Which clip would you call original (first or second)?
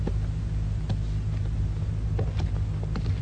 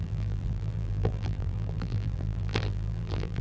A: first